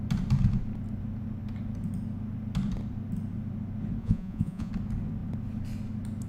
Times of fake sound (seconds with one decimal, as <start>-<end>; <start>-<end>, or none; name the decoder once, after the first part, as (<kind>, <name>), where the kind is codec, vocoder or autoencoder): 4.0-4.7 (vocoder, Vocos)